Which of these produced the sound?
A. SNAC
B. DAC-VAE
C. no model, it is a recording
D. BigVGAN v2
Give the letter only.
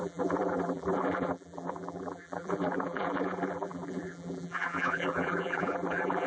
D